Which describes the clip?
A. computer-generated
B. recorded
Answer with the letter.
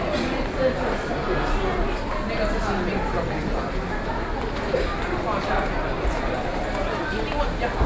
B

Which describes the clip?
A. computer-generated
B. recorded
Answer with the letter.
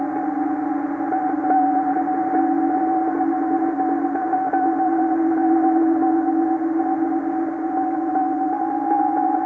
B